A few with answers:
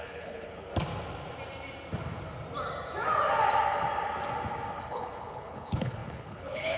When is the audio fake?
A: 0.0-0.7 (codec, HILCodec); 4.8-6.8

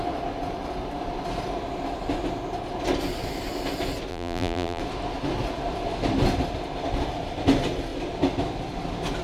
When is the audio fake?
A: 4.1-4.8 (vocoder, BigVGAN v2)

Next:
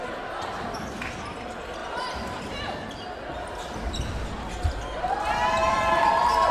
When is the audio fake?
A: 1.8-2.4 (vocoder, BigVGAN v2); 5.6-6.5

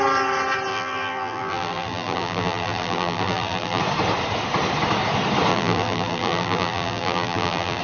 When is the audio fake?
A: 0.7-3.8 (vocoder, BigVGAN v2); 5.5-7.8